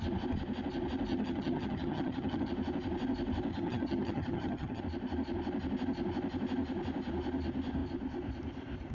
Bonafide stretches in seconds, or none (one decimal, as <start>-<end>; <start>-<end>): 0.0-1.1; 2.5-3.5; 4.8-8.9